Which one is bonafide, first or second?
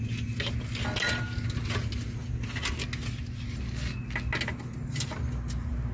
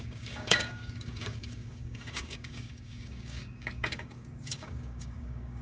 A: first